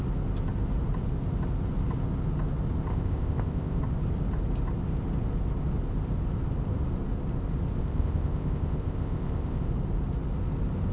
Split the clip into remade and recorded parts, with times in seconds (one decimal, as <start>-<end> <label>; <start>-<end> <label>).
0.0-2.9 recorded; 2.9-3.8 remade; 3.8-7.8 recorded; 7.8-9.7 remade; 9.7-10.9 recorded